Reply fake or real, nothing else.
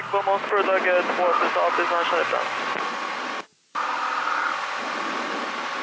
real